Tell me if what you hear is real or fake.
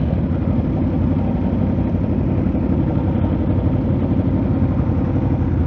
real